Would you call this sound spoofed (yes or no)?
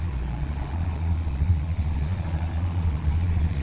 yes